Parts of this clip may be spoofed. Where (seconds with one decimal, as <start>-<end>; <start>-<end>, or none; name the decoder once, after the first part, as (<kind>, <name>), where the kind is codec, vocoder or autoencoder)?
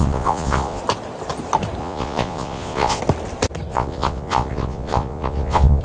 0.0-0.8 (vocoder, Vocos); 1.8-3.0; 3.7-5.8